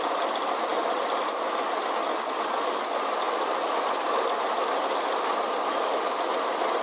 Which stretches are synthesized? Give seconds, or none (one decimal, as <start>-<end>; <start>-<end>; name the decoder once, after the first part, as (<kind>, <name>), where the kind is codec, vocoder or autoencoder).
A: none